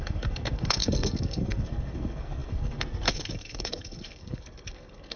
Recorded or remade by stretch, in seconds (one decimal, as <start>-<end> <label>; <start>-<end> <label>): 0.0-5.2 remade